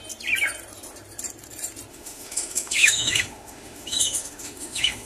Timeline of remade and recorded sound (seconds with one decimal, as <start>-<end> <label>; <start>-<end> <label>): 0.0-1.9 recorded; 1.9-5.1 remade